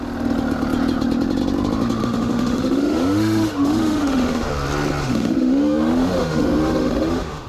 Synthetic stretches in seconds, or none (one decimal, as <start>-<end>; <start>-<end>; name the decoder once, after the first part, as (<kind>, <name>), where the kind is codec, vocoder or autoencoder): 2.0-4.5 (autoencoder, DAC-VAE); 5.0-7.5